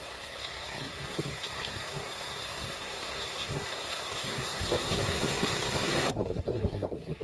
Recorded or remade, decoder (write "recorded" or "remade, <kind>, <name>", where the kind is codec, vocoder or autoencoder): remade, codec, SNAC